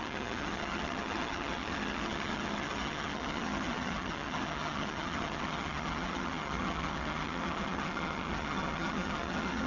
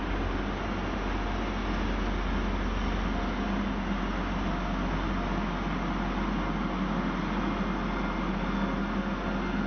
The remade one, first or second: first